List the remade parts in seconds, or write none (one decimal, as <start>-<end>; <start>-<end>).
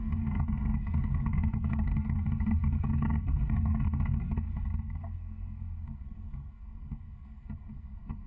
0.0-8.3